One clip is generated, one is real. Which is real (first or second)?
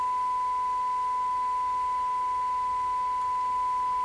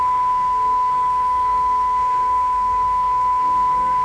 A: first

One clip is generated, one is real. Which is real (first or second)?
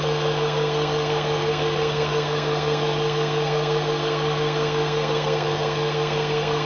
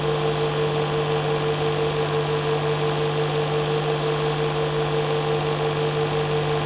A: second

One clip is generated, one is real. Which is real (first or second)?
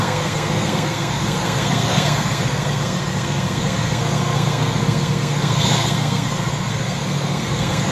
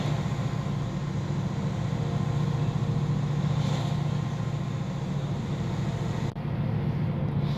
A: second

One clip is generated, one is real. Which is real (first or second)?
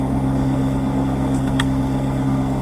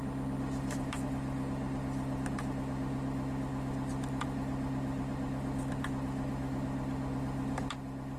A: second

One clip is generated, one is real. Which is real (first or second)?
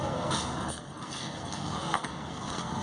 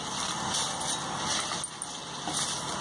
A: second